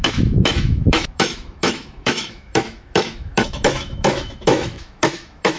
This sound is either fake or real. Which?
fake